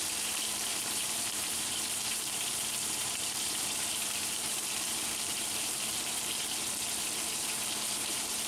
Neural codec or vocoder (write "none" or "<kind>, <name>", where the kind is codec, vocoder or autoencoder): vocoder, BigVGAN v2